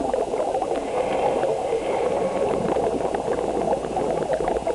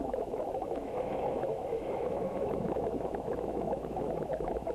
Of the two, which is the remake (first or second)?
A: second